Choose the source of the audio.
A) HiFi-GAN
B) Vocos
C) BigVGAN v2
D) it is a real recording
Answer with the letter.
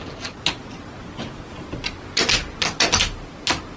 D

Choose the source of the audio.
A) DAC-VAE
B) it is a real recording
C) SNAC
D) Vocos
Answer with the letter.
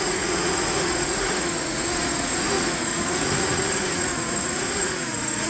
D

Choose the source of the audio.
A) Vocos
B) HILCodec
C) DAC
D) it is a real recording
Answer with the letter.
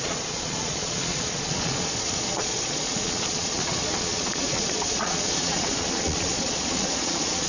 A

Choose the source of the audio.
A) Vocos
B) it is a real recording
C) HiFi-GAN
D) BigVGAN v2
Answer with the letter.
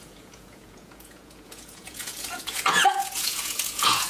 A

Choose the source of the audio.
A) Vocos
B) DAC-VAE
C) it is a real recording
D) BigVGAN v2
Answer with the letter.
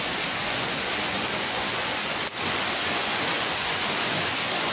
A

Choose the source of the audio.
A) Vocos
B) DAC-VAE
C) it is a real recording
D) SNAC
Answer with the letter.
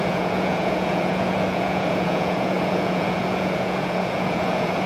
A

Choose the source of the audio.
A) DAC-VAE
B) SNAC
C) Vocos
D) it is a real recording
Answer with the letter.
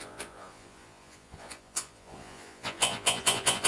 C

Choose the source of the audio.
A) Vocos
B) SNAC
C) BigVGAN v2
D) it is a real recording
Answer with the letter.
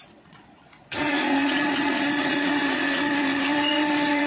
A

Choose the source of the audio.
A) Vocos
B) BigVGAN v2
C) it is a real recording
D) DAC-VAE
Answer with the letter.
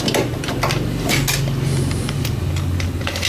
C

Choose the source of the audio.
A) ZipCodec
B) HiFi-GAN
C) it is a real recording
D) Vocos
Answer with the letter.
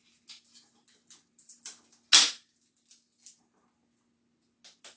C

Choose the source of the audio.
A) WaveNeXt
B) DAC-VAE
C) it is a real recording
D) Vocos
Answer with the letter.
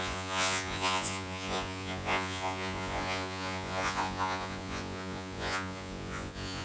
D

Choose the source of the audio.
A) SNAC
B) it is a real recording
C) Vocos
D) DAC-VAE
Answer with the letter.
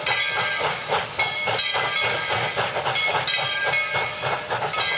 B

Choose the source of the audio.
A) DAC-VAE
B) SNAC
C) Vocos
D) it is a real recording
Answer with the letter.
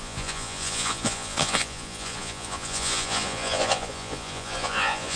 C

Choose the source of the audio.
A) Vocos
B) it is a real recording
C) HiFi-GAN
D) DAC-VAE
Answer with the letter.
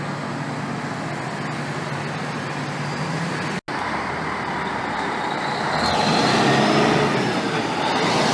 B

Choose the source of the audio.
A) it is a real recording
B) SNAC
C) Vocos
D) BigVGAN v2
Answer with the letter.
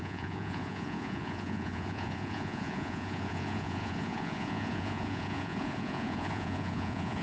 C